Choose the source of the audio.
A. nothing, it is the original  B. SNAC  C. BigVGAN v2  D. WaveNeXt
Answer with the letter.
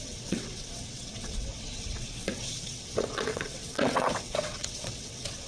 D